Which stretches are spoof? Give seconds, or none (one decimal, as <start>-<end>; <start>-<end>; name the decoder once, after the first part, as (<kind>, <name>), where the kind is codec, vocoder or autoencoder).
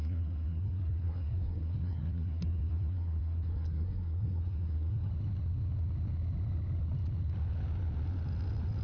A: 0.0-5.1 (codec, SNAC)